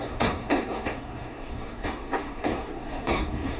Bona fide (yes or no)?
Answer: no